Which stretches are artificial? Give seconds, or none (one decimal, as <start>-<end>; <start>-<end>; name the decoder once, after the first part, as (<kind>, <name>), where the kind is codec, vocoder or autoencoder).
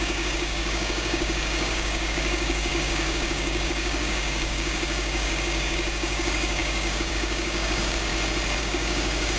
0.0-8.1 (codec, DAC); 8.6-9.4